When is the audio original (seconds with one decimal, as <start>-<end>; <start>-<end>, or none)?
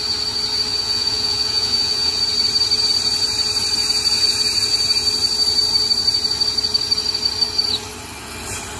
0.0-0.7; 2.2-8.8